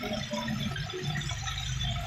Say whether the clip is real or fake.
real